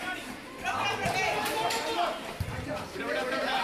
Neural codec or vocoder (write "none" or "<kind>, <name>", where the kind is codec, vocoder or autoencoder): vocoder, BigVGAN v2